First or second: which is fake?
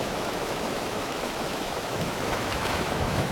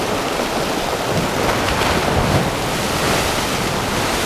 first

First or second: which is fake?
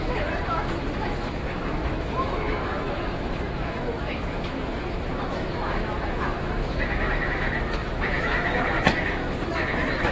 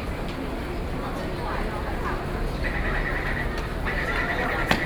first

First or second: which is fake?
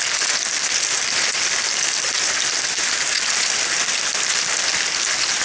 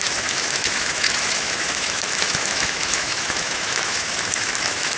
second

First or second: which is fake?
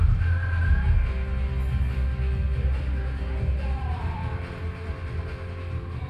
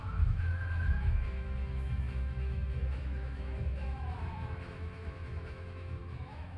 second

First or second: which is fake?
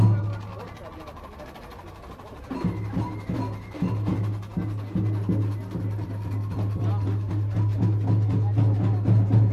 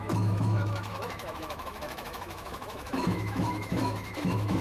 second